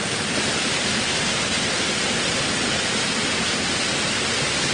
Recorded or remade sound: recorded